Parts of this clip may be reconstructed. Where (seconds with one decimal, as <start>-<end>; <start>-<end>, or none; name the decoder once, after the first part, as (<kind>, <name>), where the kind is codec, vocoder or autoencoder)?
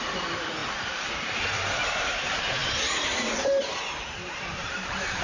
0.0-5.2 (vocoder, BigVGAN v2)